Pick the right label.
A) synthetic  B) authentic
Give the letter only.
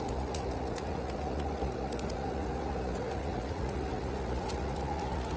A